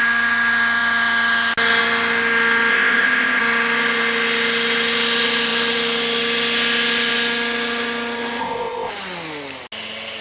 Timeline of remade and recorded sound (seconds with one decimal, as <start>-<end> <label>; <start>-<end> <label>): 0.0-2.7 recorded; 2.7-3.4 remade; 3.4-8.4 recorded; 8.4-8.9 remade; 8.9-10.2 recorded